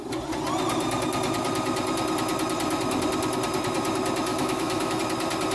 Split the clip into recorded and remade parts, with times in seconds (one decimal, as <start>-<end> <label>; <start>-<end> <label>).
0.0-4.3 recorded; 4.3-5.0 remade; 5.0-5.5 recorded